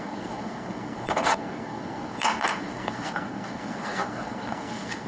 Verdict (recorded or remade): remade